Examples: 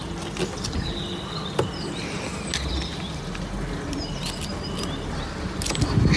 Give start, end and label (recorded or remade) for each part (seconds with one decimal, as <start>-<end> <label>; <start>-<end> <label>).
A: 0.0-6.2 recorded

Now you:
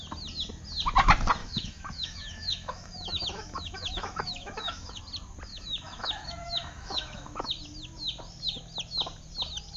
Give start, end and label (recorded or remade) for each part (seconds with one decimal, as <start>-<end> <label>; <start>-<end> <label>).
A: 0.0-1.4 recorded; 1.4-5.0 remade; 5.0-5.5 recorded; 5.5-7.5 remade; 7.5-9.8 recorded

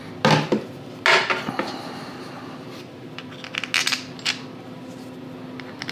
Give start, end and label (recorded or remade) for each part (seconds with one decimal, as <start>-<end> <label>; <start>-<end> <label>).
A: 0.0-5.9 recorded

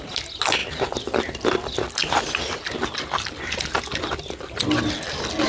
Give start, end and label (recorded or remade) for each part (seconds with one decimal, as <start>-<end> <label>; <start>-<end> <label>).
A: 0.0-5.5 recorded